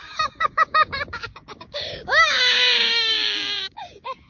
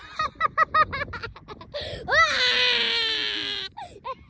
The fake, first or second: first